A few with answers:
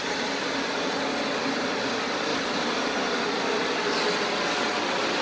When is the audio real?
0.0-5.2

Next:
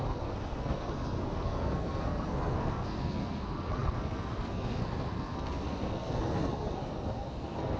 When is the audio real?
none

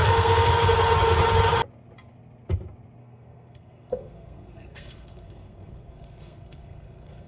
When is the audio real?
0.5-3.0

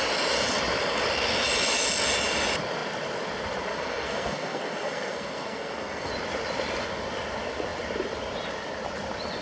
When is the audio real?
0.0-3.7; 6.1-9.4

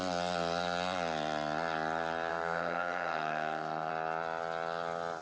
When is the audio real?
0.0-2.3; 3.9-5.2

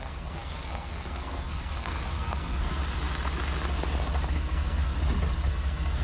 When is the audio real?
2.8-4.3; 4.9-5.5

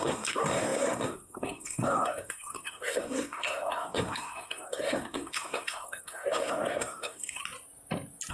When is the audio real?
7.4-8.3

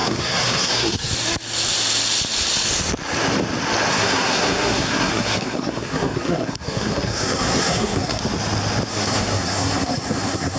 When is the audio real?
1.1-3.9; 8.2-8.9